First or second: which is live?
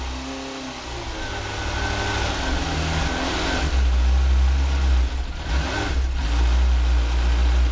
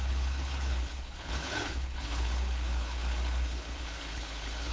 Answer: first